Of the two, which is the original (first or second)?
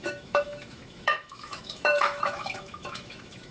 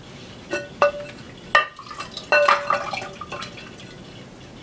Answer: second